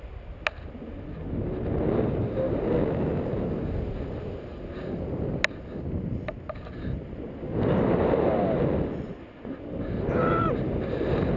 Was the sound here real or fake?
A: real